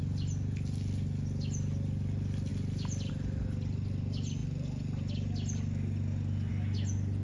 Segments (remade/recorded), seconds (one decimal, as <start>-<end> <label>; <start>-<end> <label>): 0.0-7.2 recorded